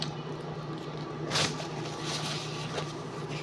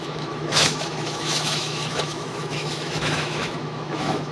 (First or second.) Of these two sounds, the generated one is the second